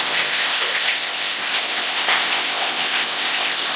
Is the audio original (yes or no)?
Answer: no